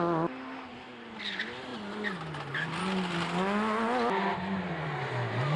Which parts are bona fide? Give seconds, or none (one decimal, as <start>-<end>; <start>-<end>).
0.0-5.6